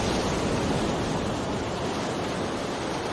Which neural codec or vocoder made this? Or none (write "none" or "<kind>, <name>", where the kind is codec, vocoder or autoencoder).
none